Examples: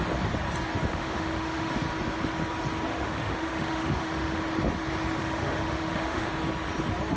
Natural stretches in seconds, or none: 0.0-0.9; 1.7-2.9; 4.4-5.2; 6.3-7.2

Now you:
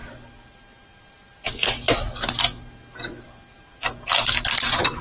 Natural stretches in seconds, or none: 0.0-5.0